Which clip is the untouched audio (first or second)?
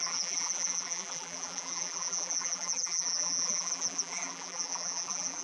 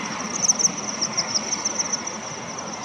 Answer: second